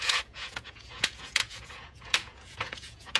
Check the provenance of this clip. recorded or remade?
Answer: remade